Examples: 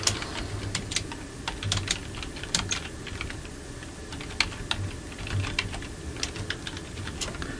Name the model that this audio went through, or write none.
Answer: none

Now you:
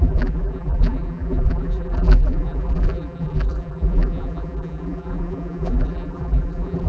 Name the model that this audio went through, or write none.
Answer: vocoder, BigVGAN v2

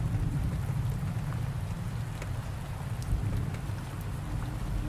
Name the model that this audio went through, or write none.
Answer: none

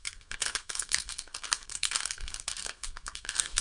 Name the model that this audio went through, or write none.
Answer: codec, SNAC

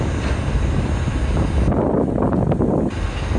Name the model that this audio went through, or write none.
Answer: none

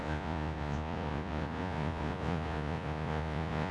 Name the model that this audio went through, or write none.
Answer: vocoder, Vocos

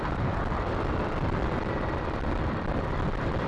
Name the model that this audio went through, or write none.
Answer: vocoder, BigVGAN v2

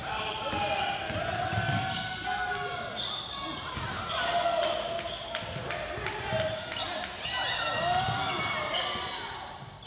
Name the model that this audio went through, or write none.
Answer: none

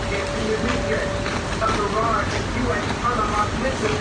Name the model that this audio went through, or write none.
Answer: none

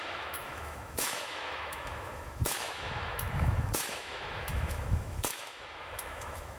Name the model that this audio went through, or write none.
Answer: autoencoder, DAC-VAE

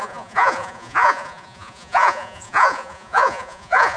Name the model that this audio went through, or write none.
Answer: vocoder, Vocos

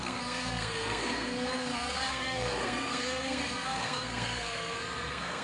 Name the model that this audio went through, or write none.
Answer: codec, SNAC